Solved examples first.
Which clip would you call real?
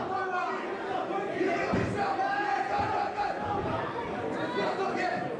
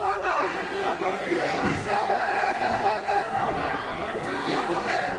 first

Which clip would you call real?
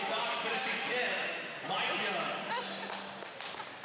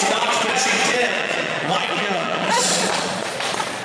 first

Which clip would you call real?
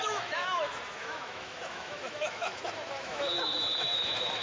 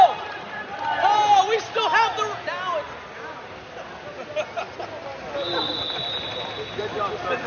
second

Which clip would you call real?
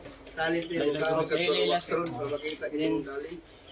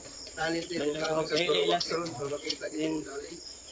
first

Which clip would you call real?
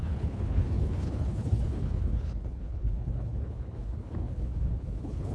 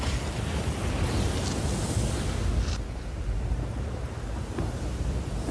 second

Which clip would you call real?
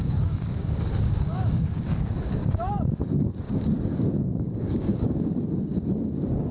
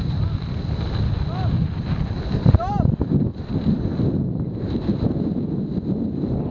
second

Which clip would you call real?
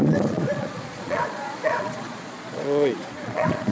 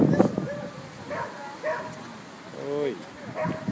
second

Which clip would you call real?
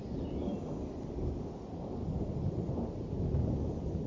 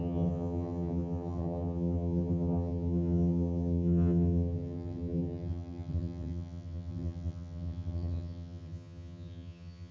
first